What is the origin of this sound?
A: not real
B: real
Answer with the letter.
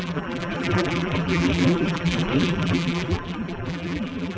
A